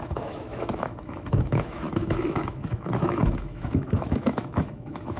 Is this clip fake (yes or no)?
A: yes